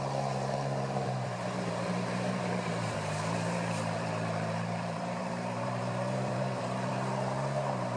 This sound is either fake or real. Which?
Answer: fake